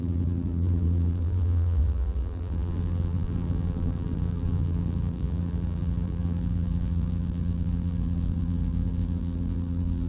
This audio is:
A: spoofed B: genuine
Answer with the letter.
A